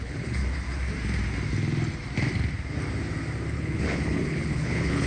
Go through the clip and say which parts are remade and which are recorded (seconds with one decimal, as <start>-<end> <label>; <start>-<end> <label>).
0.0-0.4 remade; 0.4-3.5 recorded; 3.5-5.1 remade